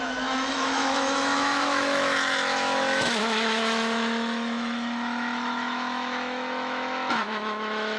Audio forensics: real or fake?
fake